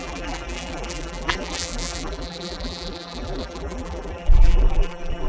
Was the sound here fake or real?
fake